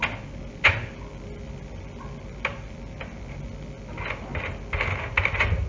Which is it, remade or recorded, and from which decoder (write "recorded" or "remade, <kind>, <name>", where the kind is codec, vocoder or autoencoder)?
recorded